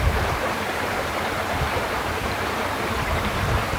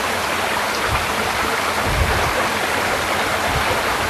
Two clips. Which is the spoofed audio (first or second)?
first